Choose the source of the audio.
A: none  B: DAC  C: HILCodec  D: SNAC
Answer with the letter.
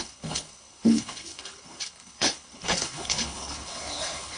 C